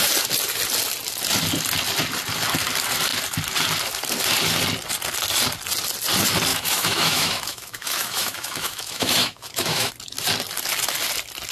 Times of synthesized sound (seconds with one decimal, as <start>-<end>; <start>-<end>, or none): 6.5-9.9